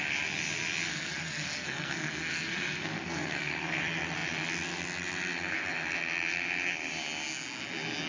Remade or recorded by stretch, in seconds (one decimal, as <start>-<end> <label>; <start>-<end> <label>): 0.0-0.9 recorded; 0.9-3.8 remade; 3.8-8.1 recorded